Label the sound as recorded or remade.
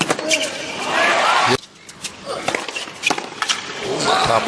recorded